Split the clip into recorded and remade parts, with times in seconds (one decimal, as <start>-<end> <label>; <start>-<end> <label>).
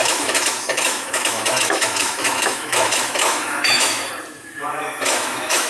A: 0.0-4.0 remade; 4.0-4.6 recorded; 4.6-5.7 remade